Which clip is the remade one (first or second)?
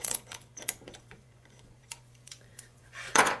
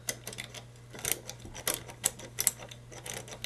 first